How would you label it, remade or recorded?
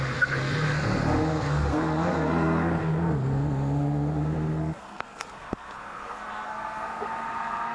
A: remade